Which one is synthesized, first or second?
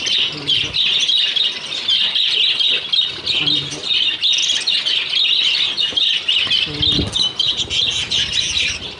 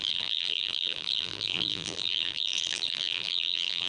second